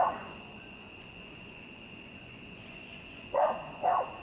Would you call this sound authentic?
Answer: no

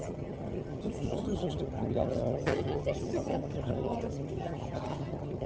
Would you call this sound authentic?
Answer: no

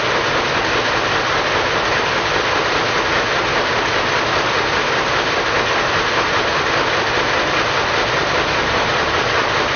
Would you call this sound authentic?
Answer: yes